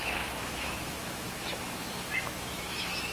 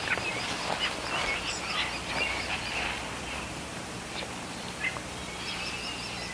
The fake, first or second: first